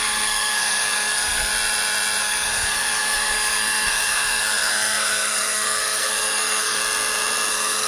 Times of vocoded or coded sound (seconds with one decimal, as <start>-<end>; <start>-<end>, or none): 0.0-1.5; 2.2-6.8; 7.5-7.9